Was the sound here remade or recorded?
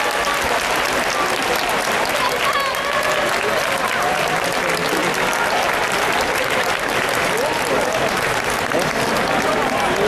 recorded